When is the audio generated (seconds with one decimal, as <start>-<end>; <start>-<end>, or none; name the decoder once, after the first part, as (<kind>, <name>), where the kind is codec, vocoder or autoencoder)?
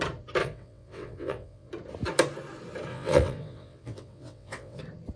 0.4-1.7 (vocoder, WaveNeXt); 2.9-4.8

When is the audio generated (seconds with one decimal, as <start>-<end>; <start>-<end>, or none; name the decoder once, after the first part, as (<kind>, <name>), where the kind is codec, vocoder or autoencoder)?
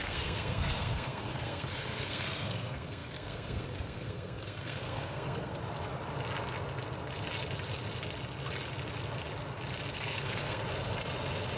0.0-5.5 (codec, SNAC); 9.9-10.6